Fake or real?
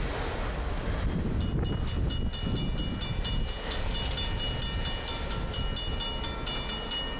real